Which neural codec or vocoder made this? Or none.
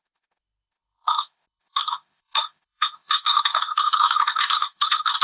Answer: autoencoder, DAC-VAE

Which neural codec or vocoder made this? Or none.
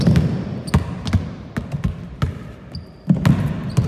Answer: none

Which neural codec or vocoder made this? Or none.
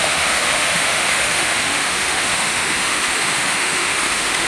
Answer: autoencoder, DAC-VAE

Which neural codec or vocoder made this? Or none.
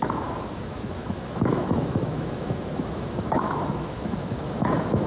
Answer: autoencoder, DAC-VAE